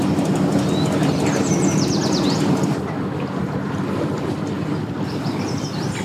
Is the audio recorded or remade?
remade